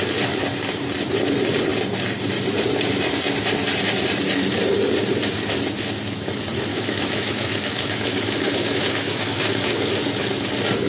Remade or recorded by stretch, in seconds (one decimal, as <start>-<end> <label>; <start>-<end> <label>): 0.0-6.7 recorded; 6.7-9.7 remade; 9.7-10.9 recorded